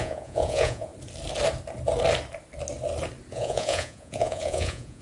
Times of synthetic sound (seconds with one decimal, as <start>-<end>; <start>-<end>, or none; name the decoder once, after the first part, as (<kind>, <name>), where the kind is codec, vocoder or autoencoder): 0.0-0.9 (vocoder, Vocos); 3.3-5.0